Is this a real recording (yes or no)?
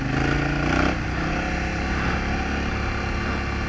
yes